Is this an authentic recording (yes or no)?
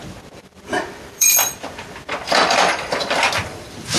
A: no